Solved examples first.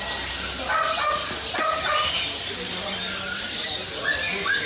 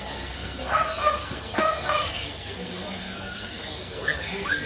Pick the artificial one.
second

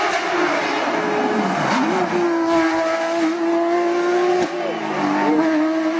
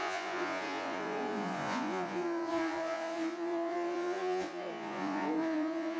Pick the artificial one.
second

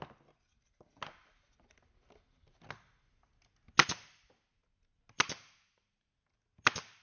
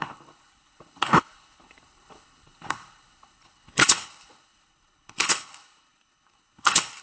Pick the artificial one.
second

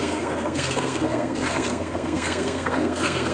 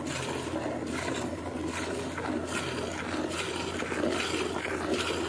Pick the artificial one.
first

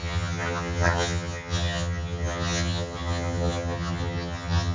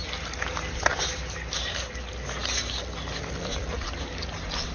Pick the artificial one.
first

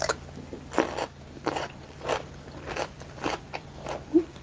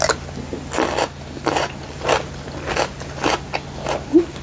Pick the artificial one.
first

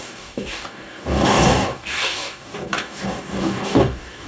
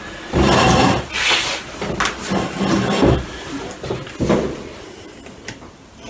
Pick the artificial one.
first